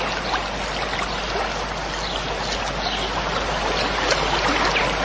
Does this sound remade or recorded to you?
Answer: recorded